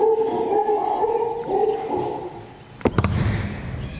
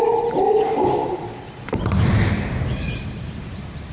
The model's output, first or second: second